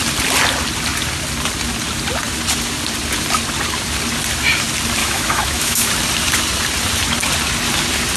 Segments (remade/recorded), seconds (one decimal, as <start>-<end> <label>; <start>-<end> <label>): 0.0-5.0 recorded; 5.0-5.9 remade; 5.9-8.2 recorded